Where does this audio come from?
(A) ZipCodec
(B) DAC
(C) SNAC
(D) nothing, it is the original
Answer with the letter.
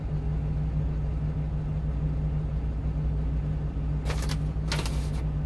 D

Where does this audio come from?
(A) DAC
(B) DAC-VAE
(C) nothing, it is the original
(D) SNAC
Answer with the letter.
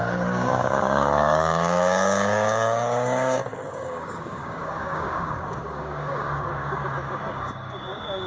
A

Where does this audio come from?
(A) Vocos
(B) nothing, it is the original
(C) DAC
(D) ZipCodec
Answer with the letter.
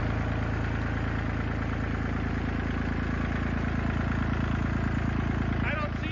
B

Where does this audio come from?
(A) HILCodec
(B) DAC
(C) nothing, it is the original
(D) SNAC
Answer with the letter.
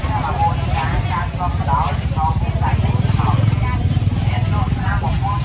C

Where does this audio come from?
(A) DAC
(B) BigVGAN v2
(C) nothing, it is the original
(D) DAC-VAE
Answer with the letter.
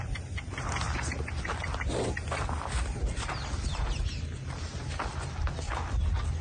C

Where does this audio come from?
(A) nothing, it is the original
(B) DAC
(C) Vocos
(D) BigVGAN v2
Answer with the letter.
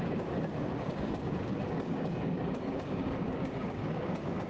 B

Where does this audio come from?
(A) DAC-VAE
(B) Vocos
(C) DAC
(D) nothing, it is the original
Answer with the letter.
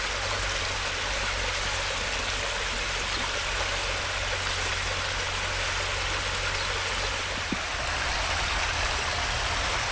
D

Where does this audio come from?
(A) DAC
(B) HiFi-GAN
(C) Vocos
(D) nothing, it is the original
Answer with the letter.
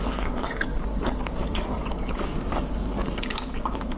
A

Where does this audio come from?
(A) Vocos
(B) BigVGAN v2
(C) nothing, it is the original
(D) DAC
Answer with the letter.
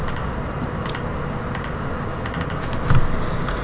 C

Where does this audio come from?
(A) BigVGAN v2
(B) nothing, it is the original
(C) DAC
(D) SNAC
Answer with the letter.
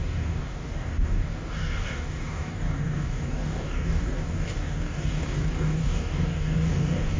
C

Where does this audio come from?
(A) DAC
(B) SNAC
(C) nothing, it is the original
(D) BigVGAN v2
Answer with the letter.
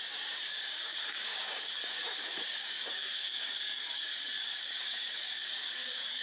A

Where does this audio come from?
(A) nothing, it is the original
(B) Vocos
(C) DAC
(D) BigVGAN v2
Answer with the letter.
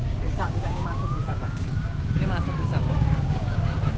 C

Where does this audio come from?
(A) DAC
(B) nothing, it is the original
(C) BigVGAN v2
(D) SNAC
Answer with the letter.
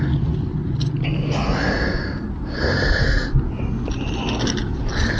B